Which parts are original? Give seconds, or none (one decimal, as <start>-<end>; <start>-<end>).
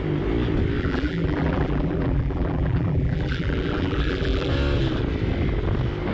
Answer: 0.0-0.8; 4.5-6.1